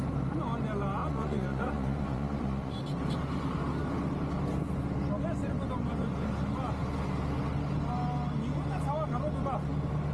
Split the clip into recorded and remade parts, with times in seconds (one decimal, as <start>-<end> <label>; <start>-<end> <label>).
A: 0.0-1.0 recorded; 1.0-2.8 remade; 2.8-10.1 recorded